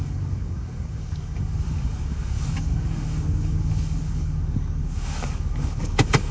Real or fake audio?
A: fake